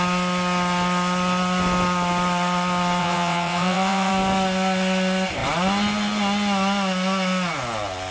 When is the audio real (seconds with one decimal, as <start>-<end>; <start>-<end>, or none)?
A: 0.0-3.0; 4.1-8.1